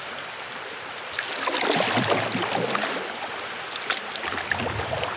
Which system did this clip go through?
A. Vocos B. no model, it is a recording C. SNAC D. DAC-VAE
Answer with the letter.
B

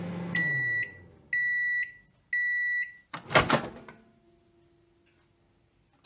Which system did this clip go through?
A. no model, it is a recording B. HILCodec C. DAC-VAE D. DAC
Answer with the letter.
A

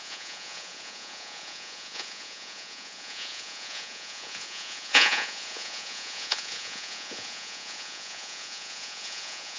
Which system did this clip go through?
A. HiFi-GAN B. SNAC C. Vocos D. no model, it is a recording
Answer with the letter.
C